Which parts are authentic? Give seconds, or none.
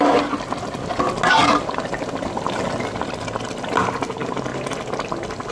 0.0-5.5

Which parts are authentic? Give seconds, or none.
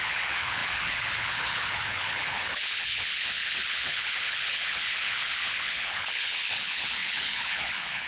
none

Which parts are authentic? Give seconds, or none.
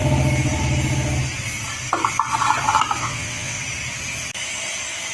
0.0-3.0; 3.6-5.1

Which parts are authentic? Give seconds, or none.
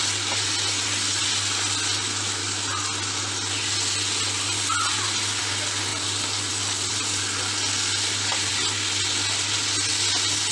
0.0-10.5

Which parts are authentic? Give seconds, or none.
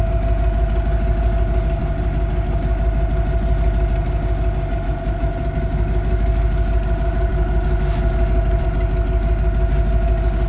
0.0-10.5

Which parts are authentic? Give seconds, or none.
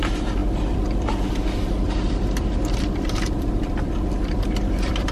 none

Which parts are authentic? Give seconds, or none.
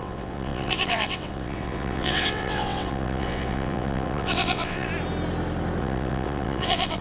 4.9-5.8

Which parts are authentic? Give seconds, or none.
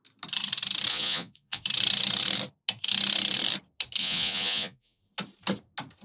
0.0-0.9; 1.6-4.0; 5.0-6.0